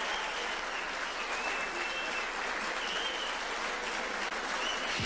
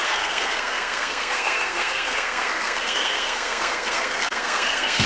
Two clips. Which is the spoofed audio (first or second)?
second